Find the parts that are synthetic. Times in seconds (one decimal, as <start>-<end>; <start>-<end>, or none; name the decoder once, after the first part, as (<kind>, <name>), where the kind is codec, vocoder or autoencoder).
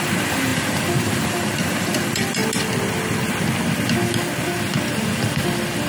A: 0.0-2.4 (vocoder, BigVGAN v2)